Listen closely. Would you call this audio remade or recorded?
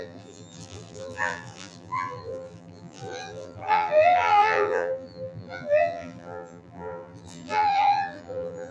remade